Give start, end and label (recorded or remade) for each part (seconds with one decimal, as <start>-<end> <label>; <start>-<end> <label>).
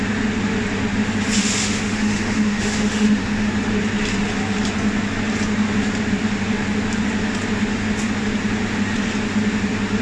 0.0-1.4 recorded; 1.4-3.5 remade; 3.5-10.0 recorded